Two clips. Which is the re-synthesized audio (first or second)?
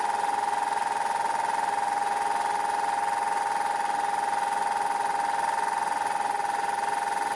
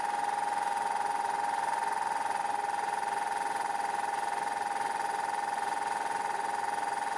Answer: second